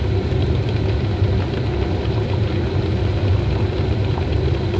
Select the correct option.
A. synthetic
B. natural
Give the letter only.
B